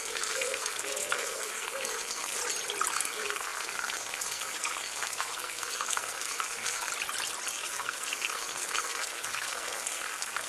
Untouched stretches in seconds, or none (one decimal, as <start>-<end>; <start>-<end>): 2.4-2.9; 6.9-7.5